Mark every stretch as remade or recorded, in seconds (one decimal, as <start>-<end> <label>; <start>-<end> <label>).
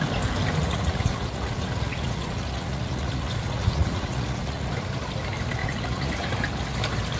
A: 0.0-0.6 recorded; 0.6-4.7 remade; 4.7-5.6 recorded; 5.6-6.3 remade; 6.3-7.2 recorded